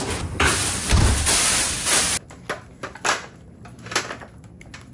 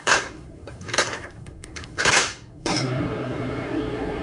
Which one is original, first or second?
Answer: first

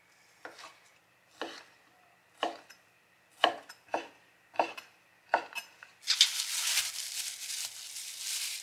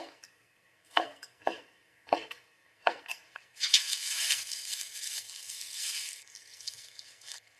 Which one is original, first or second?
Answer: first